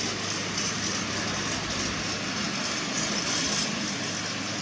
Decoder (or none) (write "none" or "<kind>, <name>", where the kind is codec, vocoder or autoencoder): none